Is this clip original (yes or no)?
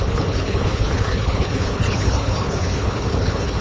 no